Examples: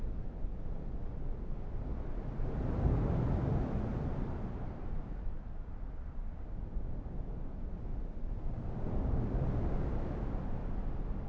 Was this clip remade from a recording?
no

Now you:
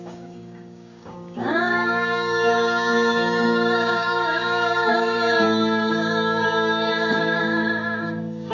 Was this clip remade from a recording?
yes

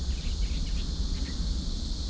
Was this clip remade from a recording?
no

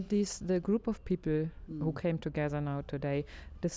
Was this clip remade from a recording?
no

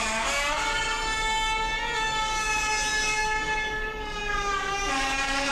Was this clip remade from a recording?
yes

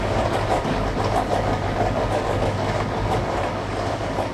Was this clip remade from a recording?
yes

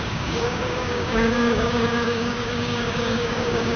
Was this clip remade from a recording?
yes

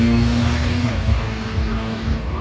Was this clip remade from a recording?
yes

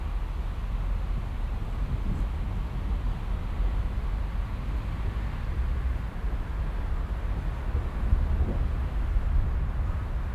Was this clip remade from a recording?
no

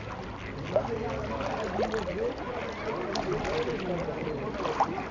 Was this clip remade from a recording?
no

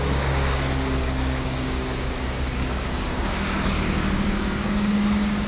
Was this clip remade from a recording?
yes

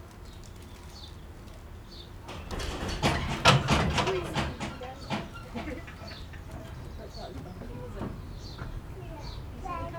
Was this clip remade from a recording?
no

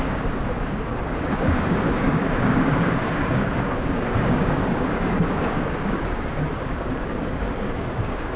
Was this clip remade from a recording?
yes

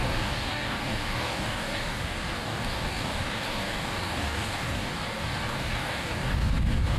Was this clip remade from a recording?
yes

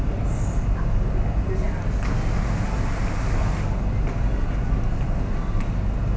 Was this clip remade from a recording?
no